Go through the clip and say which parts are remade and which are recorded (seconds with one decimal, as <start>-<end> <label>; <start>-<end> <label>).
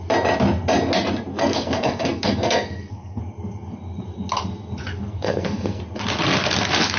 0.0-1.3 recorded; 1.3-3.2 remade; 3.2-4.9 recorded; 4.9-5.8 remade; 5.8-7.0 recorded